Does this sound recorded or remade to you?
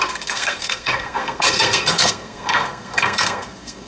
remade